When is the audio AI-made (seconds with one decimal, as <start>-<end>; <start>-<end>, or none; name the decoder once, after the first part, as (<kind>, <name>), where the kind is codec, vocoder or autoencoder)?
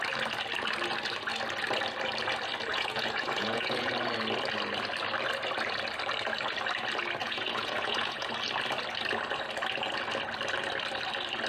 2.7-3.9 (vocoder, Vocos); 7.2-8.3